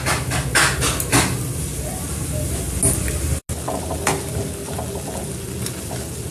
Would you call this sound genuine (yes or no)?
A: yes